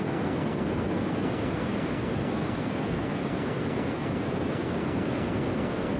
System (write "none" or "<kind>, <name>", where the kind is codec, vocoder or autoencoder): codec, SNAC